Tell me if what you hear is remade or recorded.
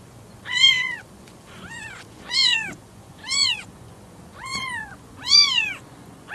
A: remade